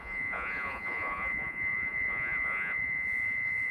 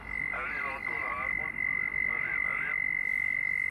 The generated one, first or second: first